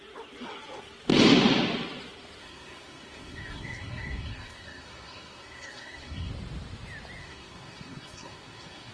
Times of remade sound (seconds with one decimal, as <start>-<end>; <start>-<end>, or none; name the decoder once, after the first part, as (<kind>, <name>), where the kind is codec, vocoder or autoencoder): 2.4-6.3 (codec, SNAC); 7.2-8.9